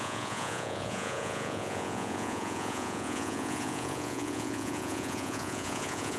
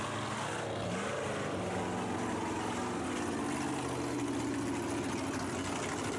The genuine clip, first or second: second